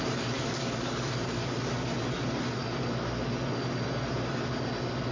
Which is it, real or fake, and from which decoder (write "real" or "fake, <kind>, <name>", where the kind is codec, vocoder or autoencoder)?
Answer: real